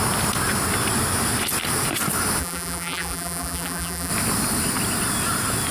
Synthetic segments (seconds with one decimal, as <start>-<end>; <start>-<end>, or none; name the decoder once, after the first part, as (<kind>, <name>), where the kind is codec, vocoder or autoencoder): 2.4-4.1 (vocoder, BigVGAN v2)